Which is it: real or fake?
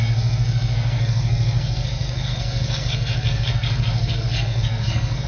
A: fake